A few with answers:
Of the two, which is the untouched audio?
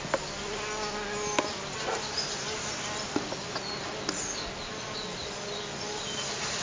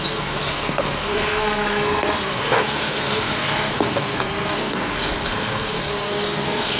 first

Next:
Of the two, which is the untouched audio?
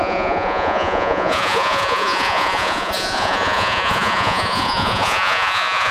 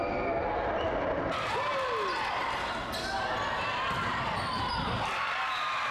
second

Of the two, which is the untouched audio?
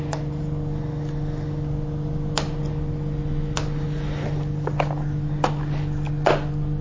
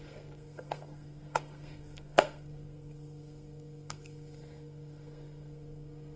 first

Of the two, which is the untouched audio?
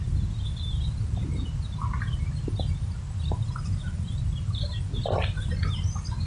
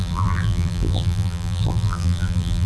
first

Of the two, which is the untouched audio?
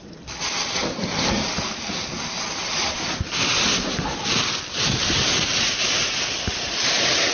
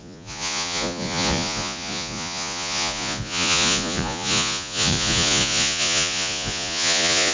first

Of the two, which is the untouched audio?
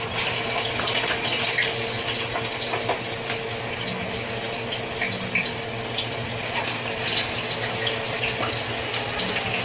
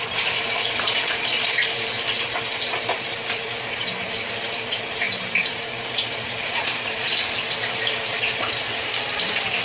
first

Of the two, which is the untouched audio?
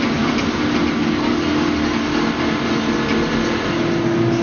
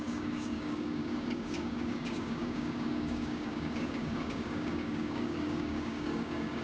first